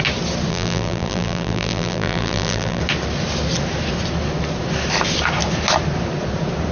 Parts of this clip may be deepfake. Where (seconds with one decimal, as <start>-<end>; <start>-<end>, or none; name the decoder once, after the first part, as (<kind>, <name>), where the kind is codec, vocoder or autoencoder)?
0.5-2.8 (vocoder, BigVGAN v2)

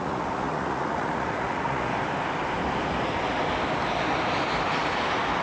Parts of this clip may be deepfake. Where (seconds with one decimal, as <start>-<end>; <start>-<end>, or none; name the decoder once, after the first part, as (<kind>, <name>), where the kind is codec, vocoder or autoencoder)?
0.0-1.9 (vocoder, Vocos)

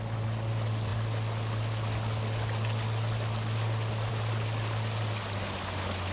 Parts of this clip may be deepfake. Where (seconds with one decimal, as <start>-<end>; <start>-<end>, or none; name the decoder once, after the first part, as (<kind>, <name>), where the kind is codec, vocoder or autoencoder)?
none

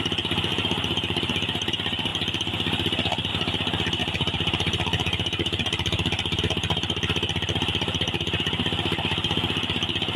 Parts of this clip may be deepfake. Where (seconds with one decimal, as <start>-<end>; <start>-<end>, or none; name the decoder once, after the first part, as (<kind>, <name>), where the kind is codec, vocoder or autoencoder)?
0.5-1.7 (vocoder, BigVGAN v2); 4.0-6.4

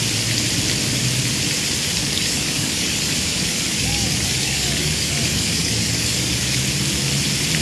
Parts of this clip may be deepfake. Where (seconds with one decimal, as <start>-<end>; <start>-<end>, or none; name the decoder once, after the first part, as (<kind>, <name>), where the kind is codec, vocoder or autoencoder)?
2.0-6.6 (codec, DAC)

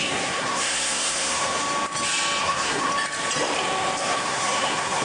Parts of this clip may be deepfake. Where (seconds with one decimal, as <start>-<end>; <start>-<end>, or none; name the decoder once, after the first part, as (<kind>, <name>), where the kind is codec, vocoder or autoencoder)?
0.0-1.6 (codec, SNAC); 2.4-2.9; 4.0-5.0